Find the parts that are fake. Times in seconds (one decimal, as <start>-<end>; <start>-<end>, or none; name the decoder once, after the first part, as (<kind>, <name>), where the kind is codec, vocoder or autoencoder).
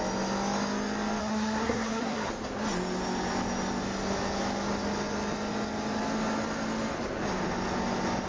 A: 1.2-2.3 (codec, SNAC)